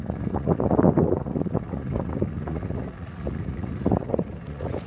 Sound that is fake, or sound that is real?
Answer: fake